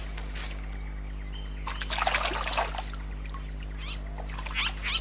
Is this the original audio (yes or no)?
yes